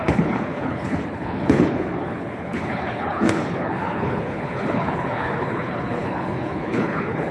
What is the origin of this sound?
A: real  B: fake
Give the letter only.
B